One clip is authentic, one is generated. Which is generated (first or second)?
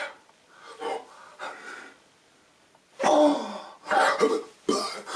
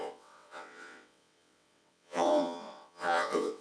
second